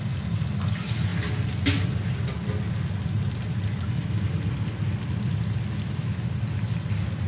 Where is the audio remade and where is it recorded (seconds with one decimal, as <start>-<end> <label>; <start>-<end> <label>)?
0.0-7.3 recorded